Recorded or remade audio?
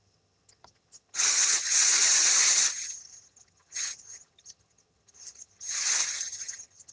remade